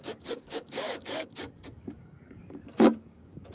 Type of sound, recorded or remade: remade